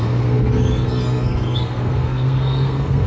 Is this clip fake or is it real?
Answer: fake